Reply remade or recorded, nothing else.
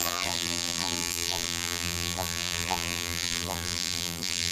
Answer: remade